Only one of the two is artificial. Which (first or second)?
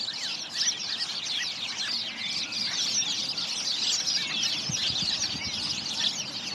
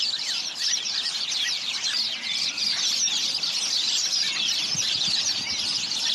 second